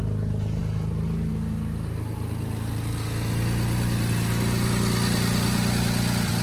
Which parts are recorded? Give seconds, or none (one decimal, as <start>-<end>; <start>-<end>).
0.0-6.4